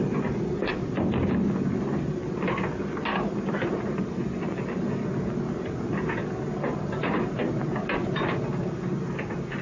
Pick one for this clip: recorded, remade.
recorded